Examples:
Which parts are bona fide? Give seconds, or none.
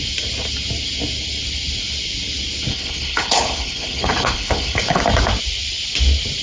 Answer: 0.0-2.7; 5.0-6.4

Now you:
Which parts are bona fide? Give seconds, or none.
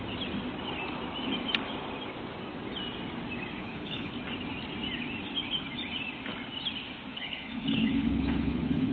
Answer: 0.0-3.6; 4.1-7.1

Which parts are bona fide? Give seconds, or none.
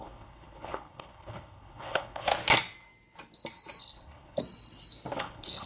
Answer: 2.3-3.8; 4.4-5.2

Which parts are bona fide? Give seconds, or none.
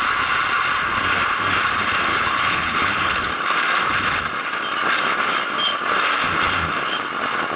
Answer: 0.0-2.1; 3.3-7.6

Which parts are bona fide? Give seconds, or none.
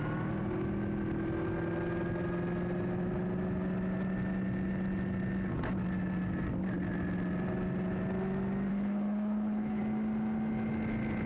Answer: 0.0-8.7; 9.8-11.3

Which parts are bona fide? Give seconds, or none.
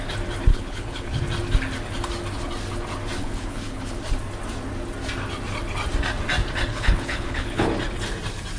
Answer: 0.0-0.5; 1.2-3.2; 4.0-6.7; 7.7-8.6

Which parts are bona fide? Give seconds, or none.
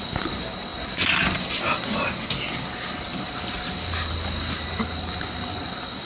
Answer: 0.0-6.0